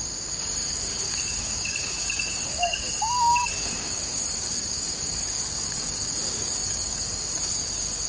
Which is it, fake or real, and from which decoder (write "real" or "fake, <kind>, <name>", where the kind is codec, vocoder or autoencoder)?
fake, codec, DAC